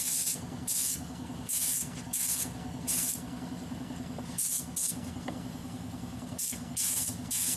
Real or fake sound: fake